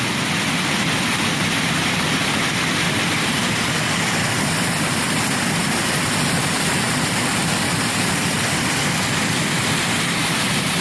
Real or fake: real